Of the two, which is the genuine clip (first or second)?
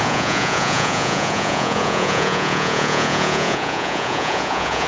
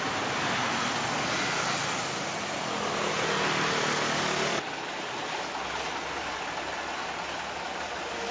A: second